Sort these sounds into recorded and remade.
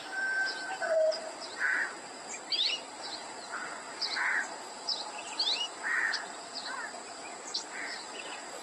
remade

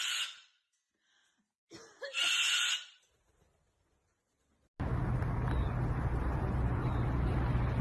recorded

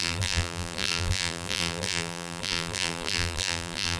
remade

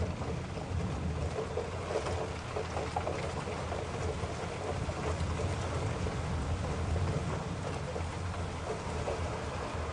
recorded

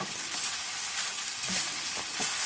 recorded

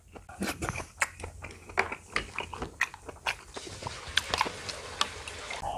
recorded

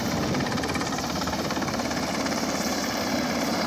remade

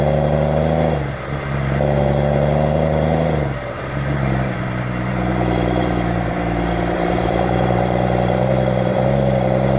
remade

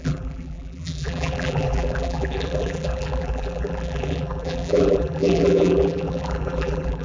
remade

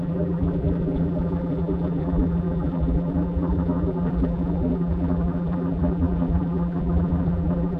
remade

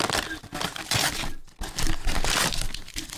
recorded